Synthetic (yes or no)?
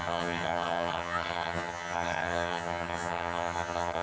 yes